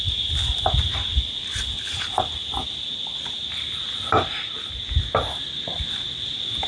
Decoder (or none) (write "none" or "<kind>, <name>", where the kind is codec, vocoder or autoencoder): none